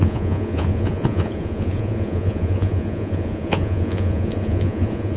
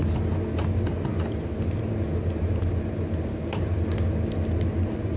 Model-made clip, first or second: first